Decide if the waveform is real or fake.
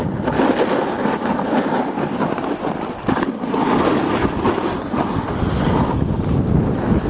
real